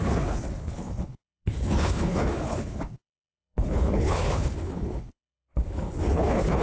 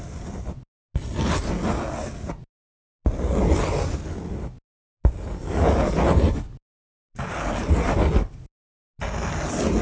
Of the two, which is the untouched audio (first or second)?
second